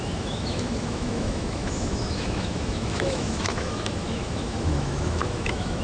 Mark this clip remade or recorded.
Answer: remade